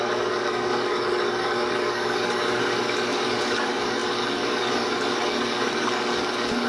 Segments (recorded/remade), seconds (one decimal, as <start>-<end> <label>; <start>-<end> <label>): 0.0-6.7 remade